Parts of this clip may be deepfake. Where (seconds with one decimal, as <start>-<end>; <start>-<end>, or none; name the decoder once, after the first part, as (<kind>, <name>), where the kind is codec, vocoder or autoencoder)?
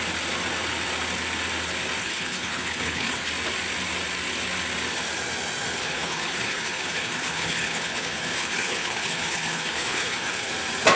2.0-3.3 (codec, HILCodec); 5.8-10.5